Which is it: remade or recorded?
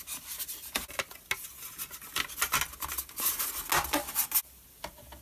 recorded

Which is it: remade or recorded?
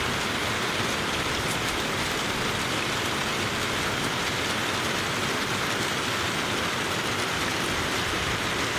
recorded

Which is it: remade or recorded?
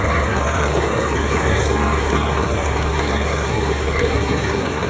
remade